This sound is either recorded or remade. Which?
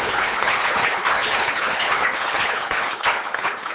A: remade